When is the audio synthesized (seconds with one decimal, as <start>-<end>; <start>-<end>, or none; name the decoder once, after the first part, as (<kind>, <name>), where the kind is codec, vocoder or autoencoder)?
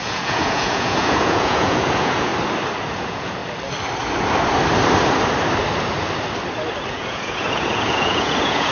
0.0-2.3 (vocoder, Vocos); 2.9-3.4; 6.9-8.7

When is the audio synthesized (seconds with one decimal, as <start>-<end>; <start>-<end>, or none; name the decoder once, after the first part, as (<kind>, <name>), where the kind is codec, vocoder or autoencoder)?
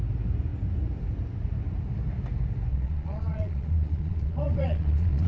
2.7-5.3 (vocoder, Vocos)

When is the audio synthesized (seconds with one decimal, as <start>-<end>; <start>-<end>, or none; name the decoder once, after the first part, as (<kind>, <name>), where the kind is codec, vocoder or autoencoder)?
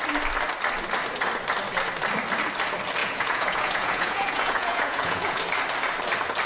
3.0-5.4 (vocoder, Vocos)